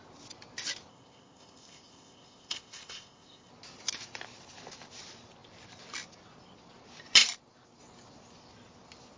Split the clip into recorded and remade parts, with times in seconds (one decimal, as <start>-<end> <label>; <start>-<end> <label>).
0.0-0.9 recorded; 0.9-3.5 remade; 3.5-9.2 recorded